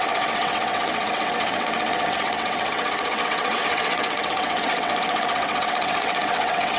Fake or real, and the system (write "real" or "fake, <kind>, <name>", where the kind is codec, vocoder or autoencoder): fake, vocoder, WaveNeXt